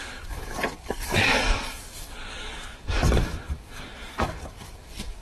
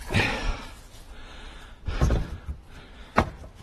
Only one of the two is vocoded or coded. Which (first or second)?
first